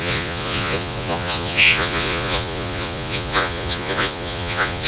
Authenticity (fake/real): fake